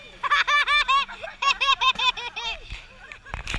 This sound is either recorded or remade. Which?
recorded